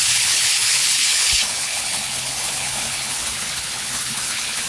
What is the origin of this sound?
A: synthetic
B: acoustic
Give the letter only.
A